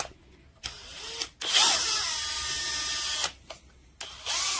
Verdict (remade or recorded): recorded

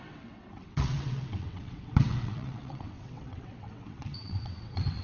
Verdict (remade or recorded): remade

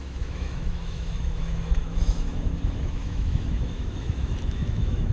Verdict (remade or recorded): remade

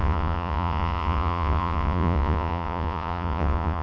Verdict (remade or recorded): remade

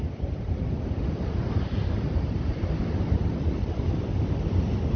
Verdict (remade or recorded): recorded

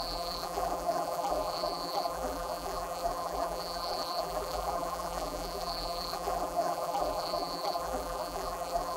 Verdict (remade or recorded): remade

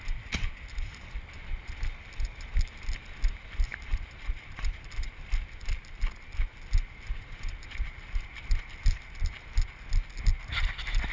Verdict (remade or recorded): recorded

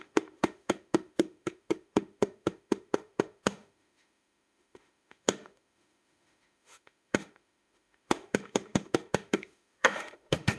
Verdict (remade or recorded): remade